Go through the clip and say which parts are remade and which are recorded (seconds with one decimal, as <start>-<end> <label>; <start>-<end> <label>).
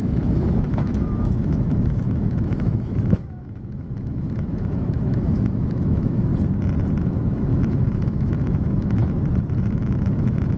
0.0-6.3 remade; 6.3-7.0 recorded; 7.0-9.0 remade; 9.0-9.6 recorded; 9.6-10.6 remade